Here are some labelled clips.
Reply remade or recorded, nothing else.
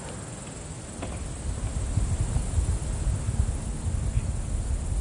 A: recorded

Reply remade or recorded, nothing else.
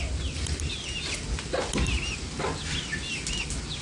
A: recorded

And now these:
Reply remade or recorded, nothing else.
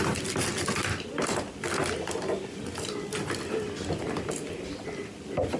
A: recorded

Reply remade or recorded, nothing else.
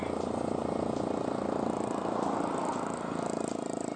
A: recorded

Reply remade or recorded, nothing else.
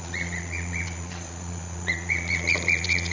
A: remade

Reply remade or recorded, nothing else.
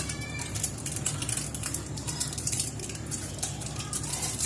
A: remade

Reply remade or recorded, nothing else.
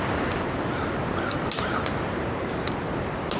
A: remade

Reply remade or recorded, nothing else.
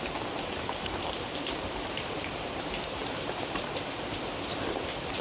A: remade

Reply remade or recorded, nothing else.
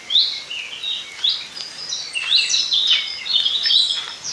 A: recorded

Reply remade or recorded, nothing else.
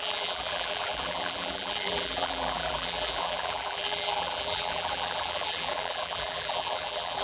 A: remade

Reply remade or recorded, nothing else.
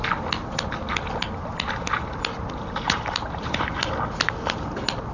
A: recorded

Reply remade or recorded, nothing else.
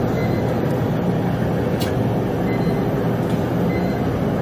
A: recorded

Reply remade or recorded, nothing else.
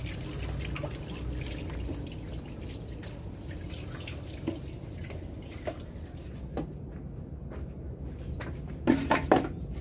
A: recorded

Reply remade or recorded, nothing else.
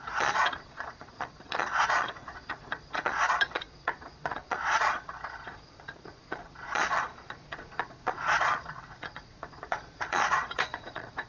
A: remade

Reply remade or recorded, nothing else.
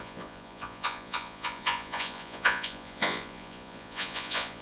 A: remade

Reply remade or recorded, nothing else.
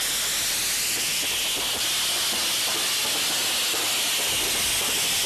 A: recorded